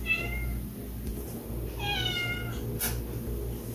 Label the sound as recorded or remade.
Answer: recorded